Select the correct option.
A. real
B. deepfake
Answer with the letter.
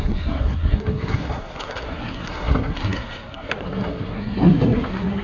B